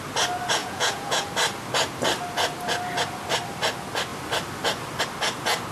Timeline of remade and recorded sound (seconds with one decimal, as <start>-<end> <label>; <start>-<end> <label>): 0.0-0.6 recorded; 0.6-1.3 remade; 1.3-5.7 recorded